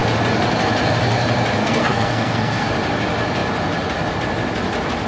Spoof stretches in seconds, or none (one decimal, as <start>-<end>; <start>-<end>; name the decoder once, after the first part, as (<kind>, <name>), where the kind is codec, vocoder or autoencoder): 1.6-2.7 (codec, SNAC)